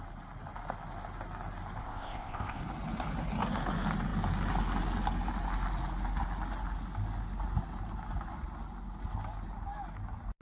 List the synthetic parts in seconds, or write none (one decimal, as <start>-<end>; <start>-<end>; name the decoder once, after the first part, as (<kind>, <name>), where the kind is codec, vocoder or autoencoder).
1.8-2.6 (codec, ZipCodec)

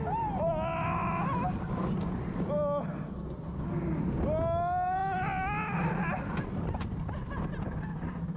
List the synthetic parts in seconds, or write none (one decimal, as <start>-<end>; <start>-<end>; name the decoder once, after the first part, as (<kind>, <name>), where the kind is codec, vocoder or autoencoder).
none